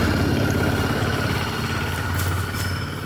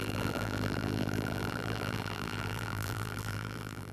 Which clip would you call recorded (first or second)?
first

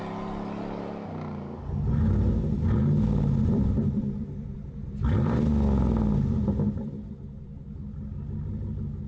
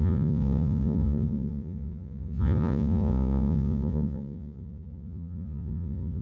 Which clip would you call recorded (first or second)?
first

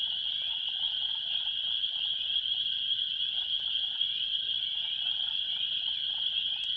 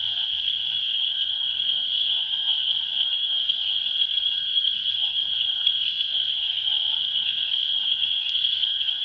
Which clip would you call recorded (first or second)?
first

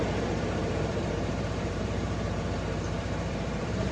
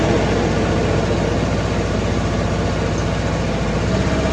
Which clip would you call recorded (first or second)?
second